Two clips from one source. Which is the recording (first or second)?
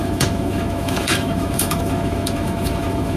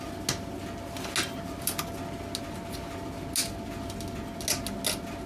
second